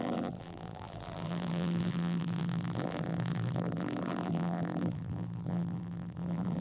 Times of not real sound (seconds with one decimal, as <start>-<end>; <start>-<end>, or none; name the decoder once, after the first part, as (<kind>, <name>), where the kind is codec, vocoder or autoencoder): 0.0-6.6 (vocoder, BigVGAN v2)